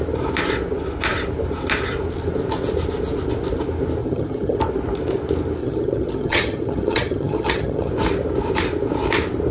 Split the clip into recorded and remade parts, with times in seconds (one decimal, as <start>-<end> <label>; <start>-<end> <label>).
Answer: 0.0-4.0 recorded; 4.0-4.6 remade; 4.6-5.6 recorded; 5.6-7.9 remade; 7.9-9.5 recorded